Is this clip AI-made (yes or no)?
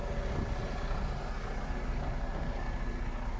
no